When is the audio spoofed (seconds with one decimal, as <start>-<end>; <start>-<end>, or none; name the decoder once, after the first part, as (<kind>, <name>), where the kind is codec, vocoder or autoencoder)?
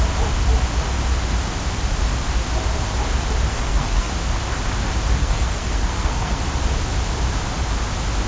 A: 3.5-4.1 (codec, SNAC); 5.2-6.4